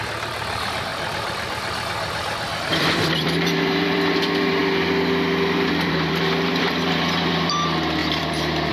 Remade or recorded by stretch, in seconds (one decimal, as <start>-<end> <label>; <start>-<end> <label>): 0.0-0.9 remade; 0.9-2.8 recorded; 2.8-4.6 remade; 4.6-5.7 recorded; 5.7-8.7 remade